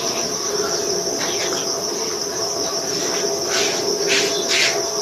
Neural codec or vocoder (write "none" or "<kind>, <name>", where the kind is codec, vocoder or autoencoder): none